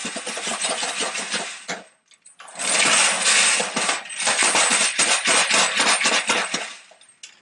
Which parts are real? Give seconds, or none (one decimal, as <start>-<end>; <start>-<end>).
0.0-7.4